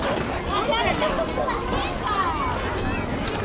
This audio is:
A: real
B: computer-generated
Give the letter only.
A